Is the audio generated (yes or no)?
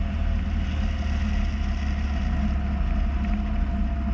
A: no